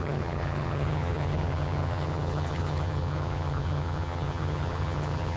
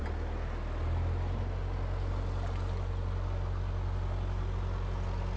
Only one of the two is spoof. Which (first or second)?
first